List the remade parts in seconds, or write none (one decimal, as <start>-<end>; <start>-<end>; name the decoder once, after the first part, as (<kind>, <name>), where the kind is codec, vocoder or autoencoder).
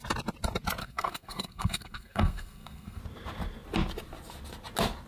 0.8-3.0 (codec, SNAC)